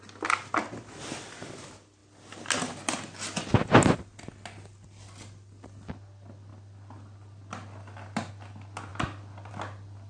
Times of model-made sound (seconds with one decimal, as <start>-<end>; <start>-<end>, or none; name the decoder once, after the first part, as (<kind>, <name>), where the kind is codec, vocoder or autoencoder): 6.5-8.3 (vocoder, BigVGAN v2); 8.9-9.5